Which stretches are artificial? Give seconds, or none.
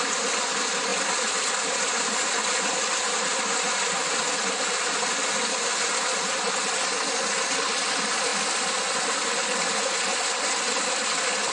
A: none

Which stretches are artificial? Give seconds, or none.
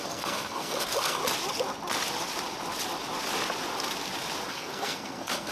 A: 0.0-1.2 (codec, SNAC); 4.5-5.5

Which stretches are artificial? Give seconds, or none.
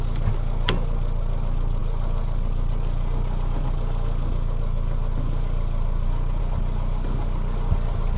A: none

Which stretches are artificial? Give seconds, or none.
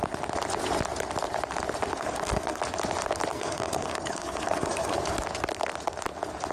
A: 1.9-2.6 (codec, SNAC); 3.3-5.0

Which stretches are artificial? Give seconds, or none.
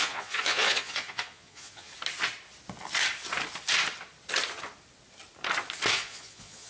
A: 0.0-1.9 (vocoder, Vocos); 5.9-6.7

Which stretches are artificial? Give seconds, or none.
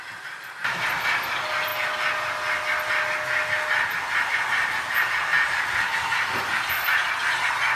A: 5.3-7.1 (vocoder, BigVGAN v2)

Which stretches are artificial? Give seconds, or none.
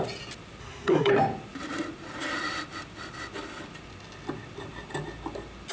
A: 0.6-1.1 (codec, SNAC)